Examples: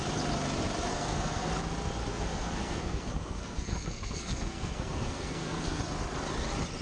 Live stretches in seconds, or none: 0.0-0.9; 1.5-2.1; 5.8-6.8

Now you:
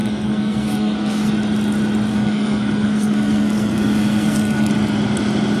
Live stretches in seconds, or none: 1.3-2.1; 4.7-5.6